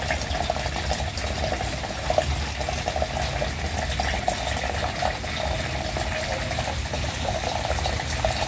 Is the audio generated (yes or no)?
no